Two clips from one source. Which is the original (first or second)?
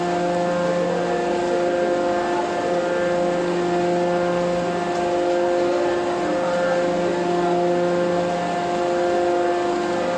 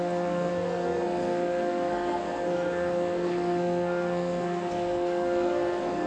first